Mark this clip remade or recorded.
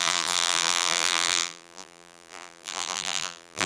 remade